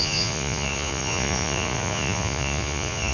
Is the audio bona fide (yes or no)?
no